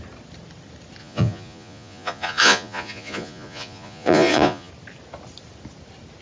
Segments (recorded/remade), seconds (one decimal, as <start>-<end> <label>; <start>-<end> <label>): 0.0-1.0 recorded; 1.0-4.7 remade; 4.7-6.2 recorded